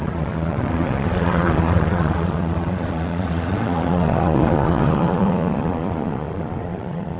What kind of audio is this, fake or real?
fake